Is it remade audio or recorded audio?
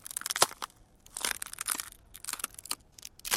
recorded